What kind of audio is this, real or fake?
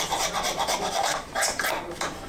fake